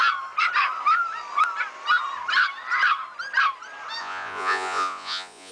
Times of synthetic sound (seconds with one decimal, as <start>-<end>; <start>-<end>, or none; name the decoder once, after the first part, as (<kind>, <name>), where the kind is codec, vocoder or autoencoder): 4.0-5.5 (vocoder, Vocos)